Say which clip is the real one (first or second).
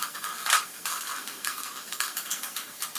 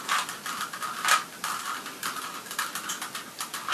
second